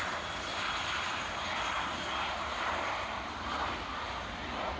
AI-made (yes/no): no